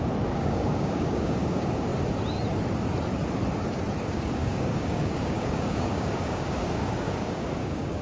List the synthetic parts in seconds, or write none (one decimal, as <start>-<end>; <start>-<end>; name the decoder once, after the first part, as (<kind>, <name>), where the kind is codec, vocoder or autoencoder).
0.0-1.9 (codec, DAC); 4.0-8.0

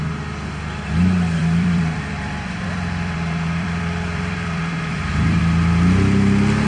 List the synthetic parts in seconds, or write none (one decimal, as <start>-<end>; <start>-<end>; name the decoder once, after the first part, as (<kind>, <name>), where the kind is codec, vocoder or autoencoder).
1.4-5.4 (vocoder, BigVGAN v2)

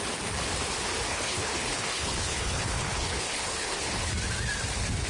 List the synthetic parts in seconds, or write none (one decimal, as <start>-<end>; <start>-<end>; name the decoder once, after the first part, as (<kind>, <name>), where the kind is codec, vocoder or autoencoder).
1.1-4.1 (codec, HILCodec)